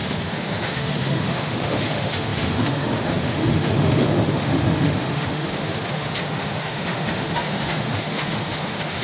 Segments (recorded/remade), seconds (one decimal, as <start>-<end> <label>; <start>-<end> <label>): 0.0-9.0 remade